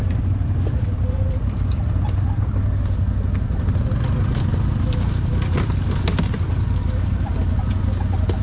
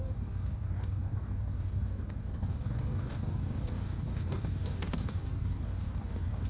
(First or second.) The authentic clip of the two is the first